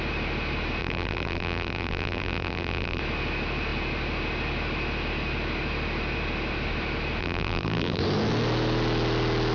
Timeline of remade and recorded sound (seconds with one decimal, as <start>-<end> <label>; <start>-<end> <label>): 0.0-0.8 recorded; 0.8-3.0 remade; 3.0-7.2 recorded; 7.2-8.0 remade; 8.0-9.5 recorded

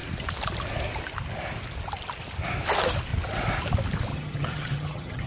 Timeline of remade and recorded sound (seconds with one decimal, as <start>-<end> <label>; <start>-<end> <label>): 0.0-4.1 recorded; 4.1-5.3 remade

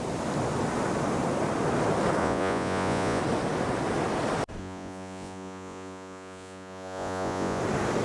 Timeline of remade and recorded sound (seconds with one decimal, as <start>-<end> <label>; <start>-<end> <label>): 0.0-2.2 recorded; 2.2-3.2 remade; 3.2-4.6 recorded; 4.6-7.6 remade; 7.6-8.0 recorded

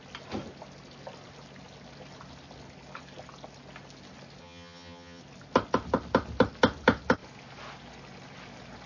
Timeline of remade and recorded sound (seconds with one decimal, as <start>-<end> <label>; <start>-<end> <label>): 0.0-4.4 recorded; 4.4-5.2 remade; 5.2-8.9 recorded

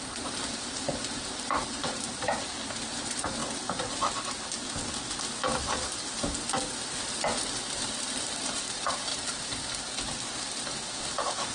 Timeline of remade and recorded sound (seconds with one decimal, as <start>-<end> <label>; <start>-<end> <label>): 0.0-3.4 remade; 3.4-8.2 recorded; 8.2-9.1 remade; 9.1-11.0 recorded; 11.0-11.5 remade

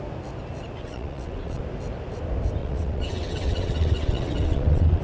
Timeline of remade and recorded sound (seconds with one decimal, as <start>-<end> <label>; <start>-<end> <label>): 0.0-0.8 recorded; 0.8-1.6 remade; 1.6-2.6 recorded; 2.6-5.0 remade